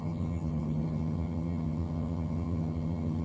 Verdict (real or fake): fake